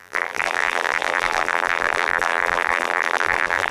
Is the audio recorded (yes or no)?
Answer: no